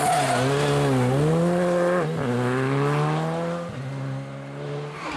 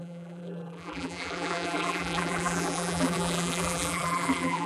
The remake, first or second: second